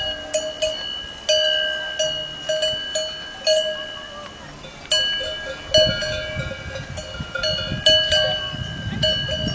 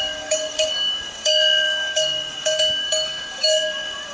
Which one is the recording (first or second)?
first